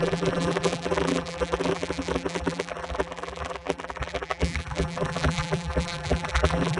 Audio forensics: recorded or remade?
remade